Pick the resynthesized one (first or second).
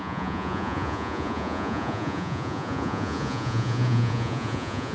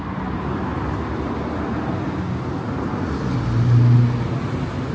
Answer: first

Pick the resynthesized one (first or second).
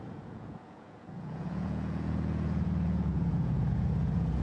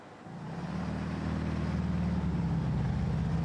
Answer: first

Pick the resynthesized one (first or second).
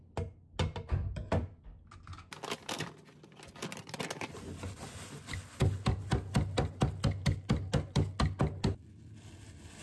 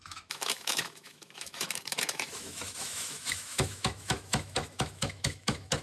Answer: second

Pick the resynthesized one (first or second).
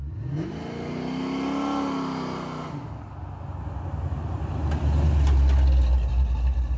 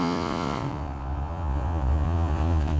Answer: second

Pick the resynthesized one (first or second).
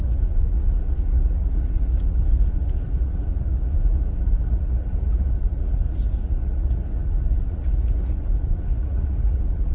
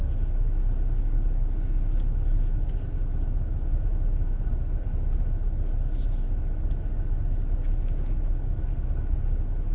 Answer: first